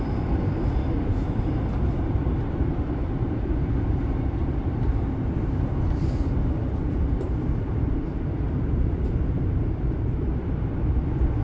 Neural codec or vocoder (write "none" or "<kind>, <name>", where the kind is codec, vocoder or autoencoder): vocoder, BigVGAN v2